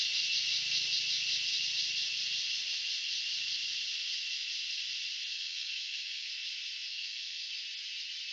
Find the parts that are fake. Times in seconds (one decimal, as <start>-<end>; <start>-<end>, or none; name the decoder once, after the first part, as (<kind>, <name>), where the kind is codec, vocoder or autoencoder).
5.3-6.3 (codec, SNAC); 6.9-7.5